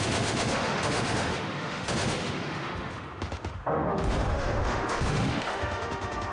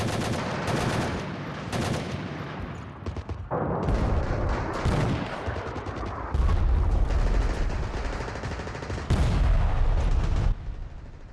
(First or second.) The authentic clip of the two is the second